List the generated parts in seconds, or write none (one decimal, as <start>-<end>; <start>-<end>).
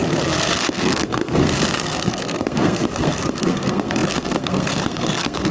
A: 0.0-5.5